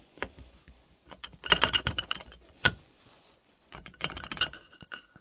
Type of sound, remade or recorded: remade